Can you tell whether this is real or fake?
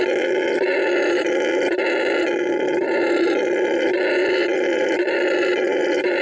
real